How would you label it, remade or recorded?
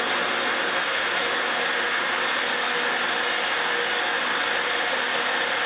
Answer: recorded